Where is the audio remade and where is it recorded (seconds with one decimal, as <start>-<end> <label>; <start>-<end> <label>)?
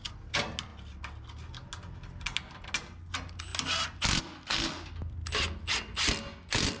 0.0-6.8 recorded